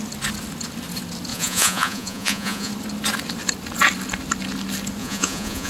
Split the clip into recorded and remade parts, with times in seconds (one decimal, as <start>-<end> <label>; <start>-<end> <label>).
0.0-1.3 recorded; 1.3-2.7 remade; 2.7-5.0 recorded; 5.0-5.7 remade